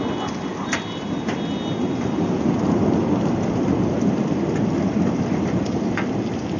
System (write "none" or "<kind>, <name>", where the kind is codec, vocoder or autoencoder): none